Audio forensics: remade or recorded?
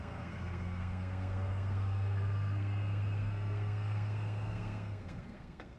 remade